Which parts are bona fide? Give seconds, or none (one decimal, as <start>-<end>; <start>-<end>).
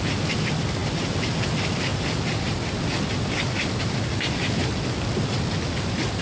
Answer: 0.0-6.2